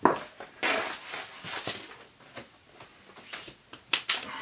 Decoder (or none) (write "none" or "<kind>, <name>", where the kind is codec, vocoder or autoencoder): none